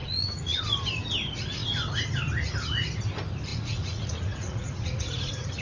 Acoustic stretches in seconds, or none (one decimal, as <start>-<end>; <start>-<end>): 0.6-3.5